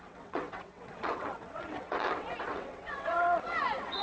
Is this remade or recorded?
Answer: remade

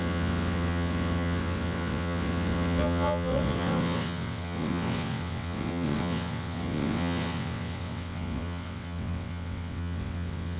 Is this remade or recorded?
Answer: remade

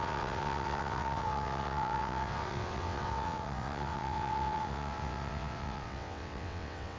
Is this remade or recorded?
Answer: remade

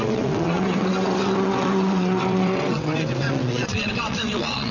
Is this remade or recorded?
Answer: remade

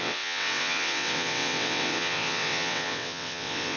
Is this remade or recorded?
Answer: remade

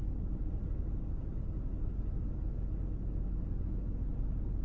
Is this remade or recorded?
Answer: recorded